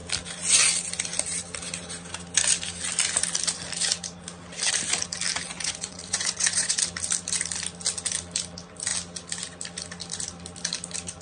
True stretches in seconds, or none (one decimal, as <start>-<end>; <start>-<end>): 0.0-5.6; 6.8-11.2